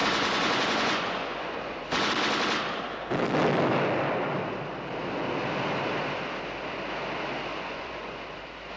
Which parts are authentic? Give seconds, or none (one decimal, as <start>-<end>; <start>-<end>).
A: 2.1-7.5; 8.2-8.8